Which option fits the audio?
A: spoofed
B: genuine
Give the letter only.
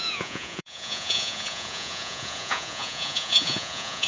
A